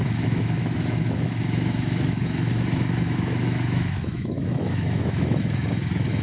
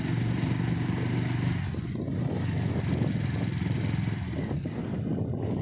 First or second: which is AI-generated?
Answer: first